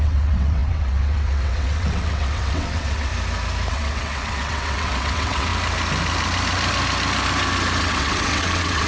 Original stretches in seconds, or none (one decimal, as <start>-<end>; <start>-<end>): 3.1-3.7; 5.5-7.8